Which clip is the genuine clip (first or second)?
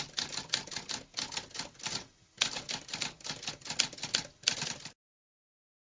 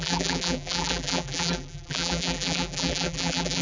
first